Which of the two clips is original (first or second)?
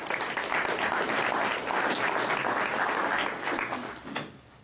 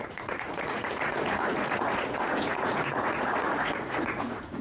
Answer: first